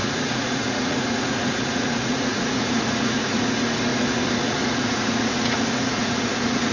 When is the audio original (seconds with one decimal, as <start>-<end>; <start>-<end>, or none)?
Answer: 3.4-3.9